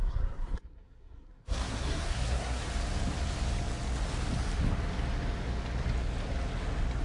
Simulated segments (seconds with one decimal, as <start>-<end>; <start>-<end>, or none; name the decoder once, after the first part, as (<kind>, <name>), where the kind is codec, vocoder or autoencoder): 0.0-2.7 (codec, SNAC)